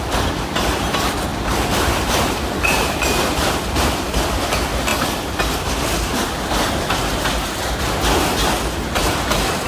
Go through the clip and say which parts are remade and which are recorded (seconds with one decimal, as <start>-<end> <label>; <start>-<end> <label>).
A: 0.0-1.3 recorded; 1.3-4.2 remade; 4.2-9.7 recorded

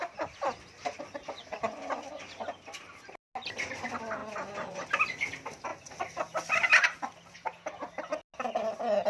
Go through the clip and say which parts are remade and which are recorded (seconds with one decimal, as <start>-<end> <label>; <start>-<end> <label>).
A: 0.0-4.2 recorded; 4.2-5.3 remade; 5.3-5.7 recorded; 5.7-6.2 remade; 6.2-9.1 recorded